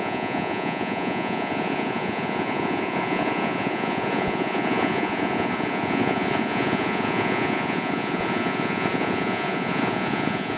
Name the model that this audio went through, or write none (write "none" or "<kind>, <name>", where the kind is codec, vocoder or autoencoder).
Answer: vocoder, Vocos